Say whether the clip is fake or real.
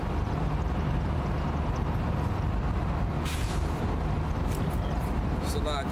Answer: real